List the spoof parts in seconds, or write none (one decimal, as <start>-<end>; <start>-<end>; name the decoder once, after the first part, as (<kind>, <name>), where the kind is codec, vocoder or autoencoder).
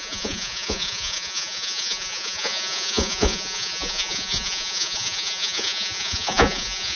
0.0-7.0 (vocoder, Vocos)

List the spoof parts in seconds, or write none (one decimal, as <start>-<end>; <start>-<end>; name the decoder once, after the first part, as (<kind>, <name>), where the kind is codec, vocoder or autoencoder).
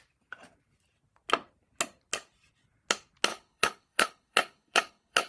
3.3-5.3 (codec, HILCodec)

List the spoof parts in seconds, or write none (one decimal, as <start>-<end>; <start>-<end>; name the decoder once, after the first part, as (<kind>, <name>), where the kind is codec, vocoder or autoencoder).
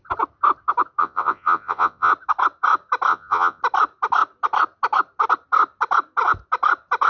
1.0-2.1 (vocoder, Vocos); 3.1-3.6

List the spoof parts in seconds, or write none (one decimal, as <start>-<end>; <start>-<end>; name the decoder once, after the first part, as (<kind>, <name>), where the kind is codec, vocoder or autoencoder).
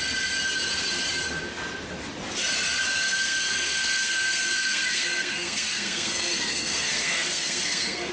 2.9-8.1 (codec, SNAC)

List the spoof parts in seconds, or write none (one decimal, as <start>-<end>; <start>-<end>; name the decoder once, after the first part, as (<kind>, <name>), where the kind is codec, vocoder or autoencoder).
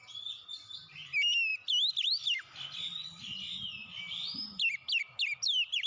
none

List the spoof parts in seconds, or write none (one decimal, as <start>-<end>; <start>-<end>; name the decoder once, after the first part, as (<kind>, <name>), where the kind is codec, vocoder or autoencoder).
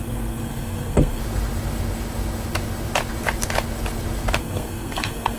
0.0-1.2 (codec, SNAC); 4.4-5.4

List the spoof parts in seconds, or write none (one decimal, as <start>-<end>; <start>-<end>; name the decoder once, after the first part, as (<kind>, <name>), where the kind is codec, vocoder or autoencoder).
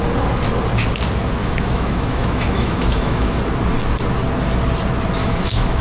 1.4-3.4 (autoencoder, DAC-VAE); 5.2-5.8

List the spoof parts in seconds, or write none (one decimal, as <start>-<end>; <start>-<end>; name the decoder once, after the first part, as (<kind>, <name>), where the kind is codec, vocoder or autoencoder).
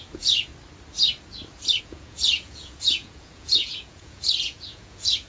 0.0-0.5 (vocoder, Vocos); 1.8-5.3